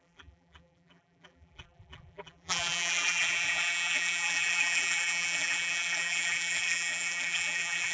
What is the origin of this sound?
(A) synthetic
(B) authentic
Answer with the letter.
A